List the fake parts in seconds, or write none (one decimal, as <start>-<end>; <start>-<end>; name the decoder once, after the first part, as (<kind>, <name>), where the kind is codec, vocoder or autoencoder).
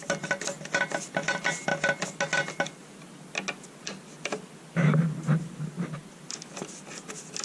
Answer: none